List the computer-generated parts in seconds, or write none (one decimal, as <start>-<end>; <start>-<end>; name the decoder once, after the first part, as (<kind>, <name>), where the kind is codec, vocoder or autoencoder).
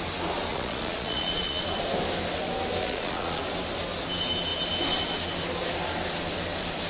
0.5-1.6 (vocoder, Vocos); 2.8-3.4